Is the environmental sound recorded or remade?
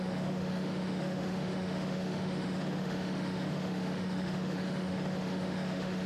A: remade